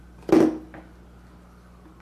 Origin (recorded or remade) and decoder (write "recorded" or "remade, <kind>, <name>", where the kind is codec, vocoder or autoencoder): recorded